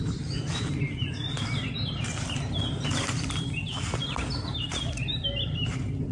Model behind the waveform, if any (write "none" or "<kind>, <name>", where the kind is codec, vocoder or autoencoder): vocoder, BigVGAN v2